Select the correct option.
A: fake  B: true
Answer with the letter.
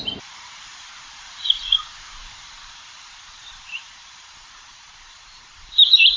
A